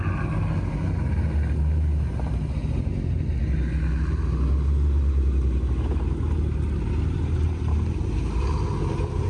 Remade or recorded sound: recorded